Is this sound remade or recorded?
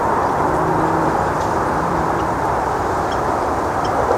remade